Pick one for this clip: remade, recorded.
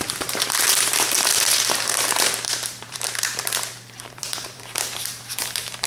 remade